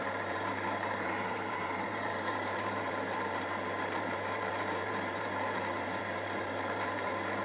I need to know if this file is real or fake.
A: fake